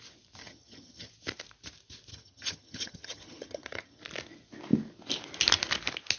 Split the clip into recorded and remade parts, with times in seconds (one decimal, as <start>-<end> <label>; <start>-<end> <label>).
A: 0.0-0.4 recorded; 0.4-1.1 remade; 1.1-2.1 recorded; 2.1-4.0 remade; 4.0-6.2 recorded